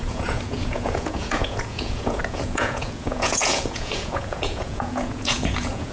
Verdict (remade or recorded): remade